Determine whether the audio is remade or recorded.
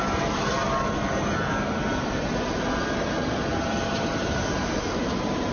remade